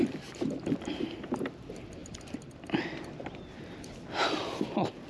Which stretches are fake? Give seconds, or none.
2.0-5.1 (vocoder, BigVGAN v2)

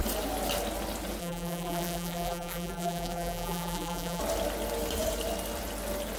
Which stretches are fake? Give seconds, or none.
1.2-4.2 (vocoder, BigVGAN v2)

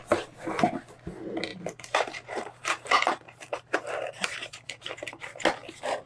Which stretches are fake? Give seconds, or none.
1.5-5.2 (vocoder, BigVGAN v2)

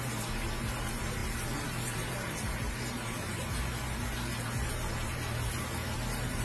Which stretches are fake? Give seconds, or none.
0.0-6.4 (vocoder, BigVGAN v2)

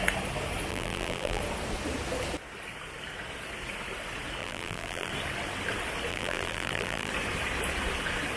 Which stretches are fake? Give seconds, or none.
0.7-1.4 (vocoder, BigVGAN v2); 4.4-5.1; 6.1-7.1

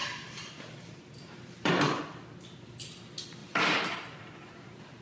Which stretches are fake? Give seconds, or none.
0.0-2.0 (vocoder, BigVGAN v2); 3.4-4.5

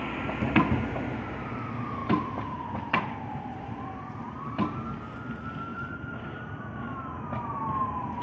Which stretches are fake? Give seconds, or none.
2.0-4.4 (vocoder, BigVGAN v2); 5.7-7.1